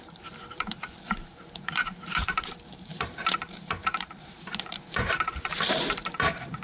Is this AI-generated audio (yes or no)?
yes